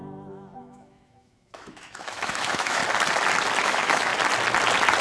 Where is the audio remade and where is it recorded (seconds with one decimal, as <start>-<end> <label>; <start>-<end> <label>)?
0.0-0.6 recorded; 0.6-2.8 remade; 2.8-3.6 recorded; 3.6-4.1 remade; 4.1-5.0 recorded